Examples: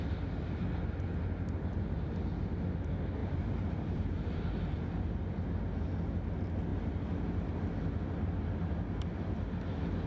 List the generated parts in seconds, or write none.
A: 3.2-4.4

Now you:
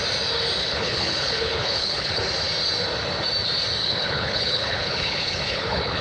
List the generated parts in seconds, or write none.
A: 0.6-2.2; 3.8-6.0